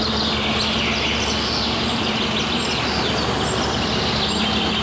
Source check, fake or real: real